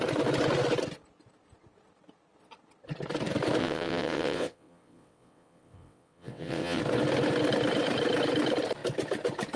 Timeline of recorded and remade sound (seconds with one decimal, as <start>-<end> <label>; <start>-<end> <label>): 0.0-3.6 recorded; 3.6-6.8 remade; 6.8-9.6 recorded